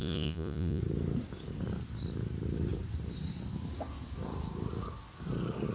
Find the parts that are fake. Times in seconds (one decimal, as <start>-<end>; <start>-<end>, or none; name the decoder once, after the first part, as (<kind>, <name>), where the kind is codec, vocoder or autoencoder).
0.0-0.8 (vocoder, Vocos)